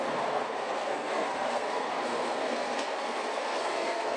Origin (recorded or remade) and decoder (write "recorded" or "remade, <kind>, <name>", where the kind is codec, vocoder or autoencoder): remade, codec, SNAC